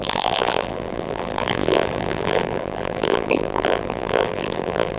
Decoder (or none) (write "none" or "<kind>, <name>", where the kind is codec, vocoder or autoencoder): vocoder, BigVGAN v2